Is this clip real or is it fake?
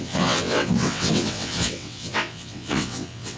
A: fake